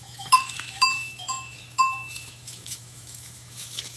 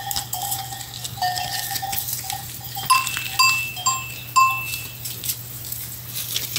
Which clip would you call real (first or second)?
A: second